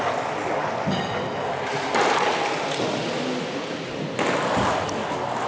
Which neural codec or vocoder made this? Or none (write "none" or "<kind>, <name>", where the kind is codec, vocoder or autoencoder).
none